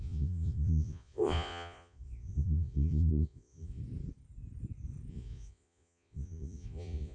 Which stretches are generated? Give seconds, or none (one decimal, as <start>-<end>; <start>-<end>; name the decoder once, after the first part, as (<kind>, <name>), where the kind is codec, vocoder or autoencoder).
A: 0.0-3.8 (vocoder, Vocos); 5.1-7.1